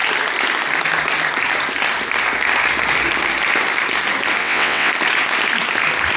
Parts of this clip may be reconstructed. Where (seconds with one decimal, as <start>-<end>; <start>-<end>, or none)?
4.4-4.9